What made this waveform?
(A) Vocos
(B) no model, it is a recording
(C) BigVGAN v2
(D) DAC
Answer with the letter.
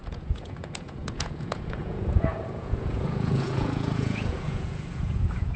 A